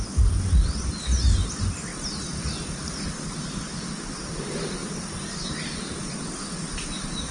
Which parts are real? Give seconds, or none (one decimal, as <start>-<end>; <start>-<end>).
0.0-7.3